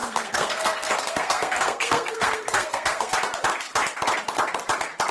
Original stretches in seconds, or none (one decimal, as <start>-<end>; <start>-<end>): 3.1-5.1